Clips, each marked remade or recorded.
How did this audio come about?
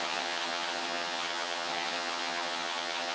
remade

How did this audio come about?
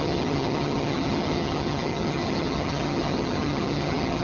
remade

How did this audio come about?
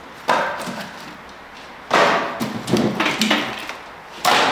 recorded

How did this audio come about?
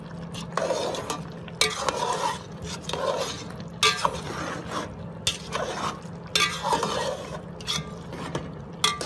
recorded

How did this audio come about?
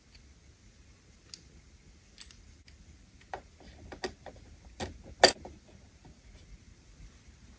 recorded